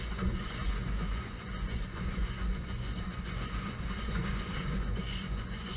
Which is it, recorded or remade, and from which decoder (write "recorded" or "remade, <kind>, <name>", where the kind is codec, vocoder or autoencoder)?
remade, vocoder, Vocos